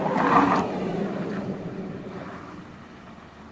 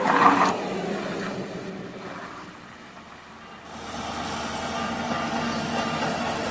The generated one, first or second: first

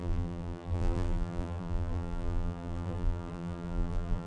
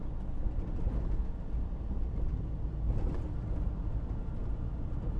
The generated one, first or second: first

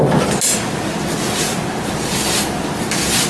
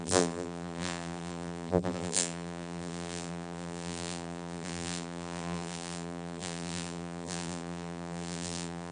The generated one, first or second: second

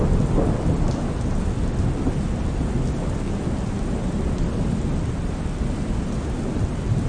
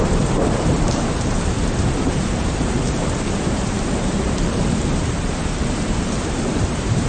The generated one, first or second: second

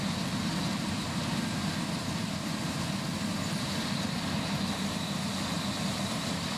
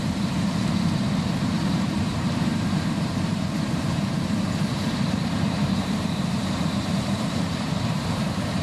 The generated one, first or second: second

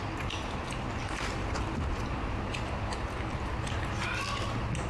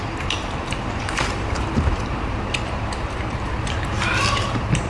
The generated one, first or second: second